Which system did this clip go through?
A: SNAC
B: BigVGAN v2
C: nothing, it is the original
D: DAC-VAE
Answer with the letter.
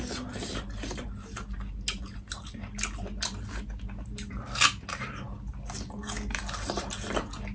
C